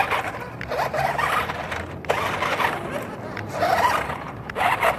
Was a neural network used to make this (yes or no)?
no